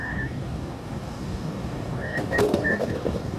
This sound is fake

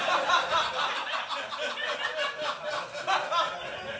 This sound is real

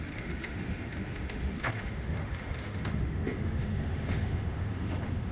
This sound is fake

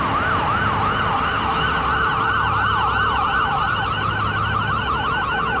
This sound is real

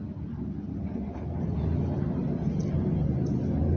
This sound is real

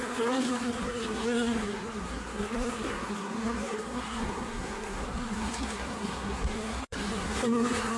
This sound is fake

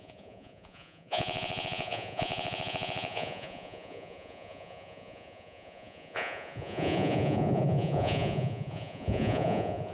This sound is fake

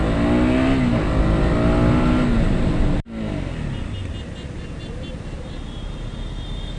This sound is real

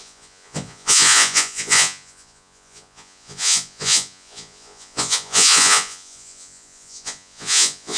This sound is fake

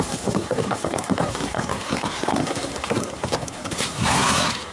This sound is fake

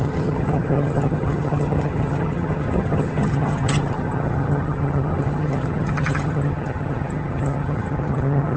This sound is fake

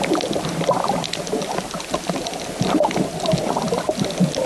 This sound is real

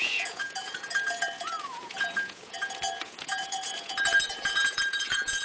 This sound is fake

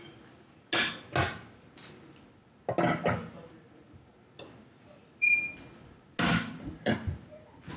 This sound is real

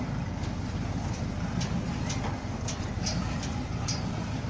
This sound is real